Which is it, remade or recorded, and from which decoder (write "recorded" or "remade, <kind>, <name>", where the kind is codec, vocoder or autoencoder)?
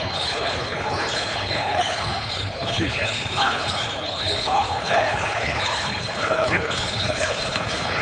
remade, codec, HILCodec